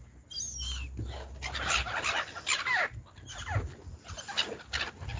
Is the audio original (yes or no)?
yes